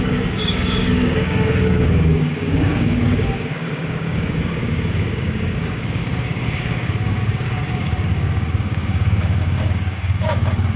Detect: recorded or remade remade